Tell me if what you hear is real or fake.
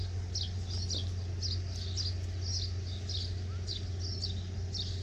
real